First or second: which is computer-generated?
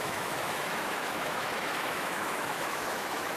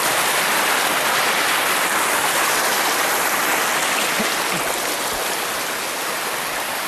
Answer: first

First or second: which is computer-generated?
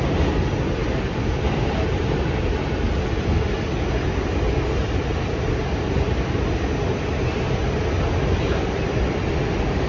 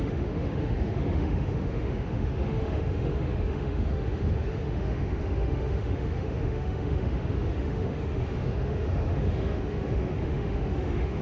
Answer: second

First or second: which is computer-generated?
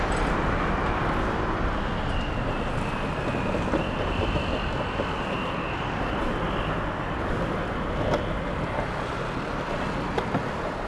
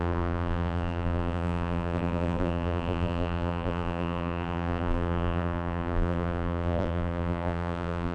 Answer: second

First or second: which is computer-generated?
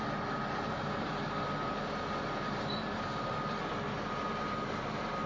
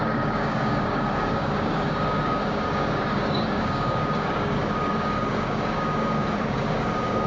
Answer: second